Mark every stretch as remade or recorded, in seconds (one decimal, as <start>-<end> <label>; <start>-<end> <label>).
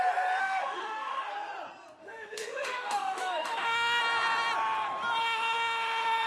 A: 0.0-0.4 recorded; 0.4-1.2 remade; 1.2-2.0 recorded; 2.0-4.0 remade; 4.0-5.2 recorded; 5.2-6.3 remade